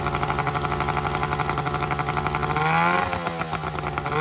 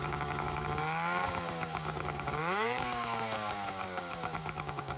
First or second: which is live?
first